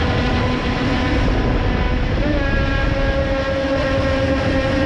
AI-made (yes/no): no